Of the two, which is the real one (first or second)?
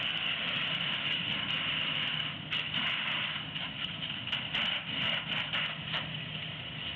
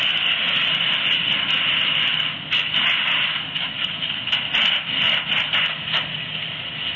second